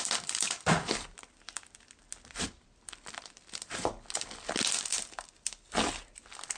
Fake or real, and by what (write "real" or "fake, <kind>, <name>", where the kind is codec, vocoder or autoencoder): real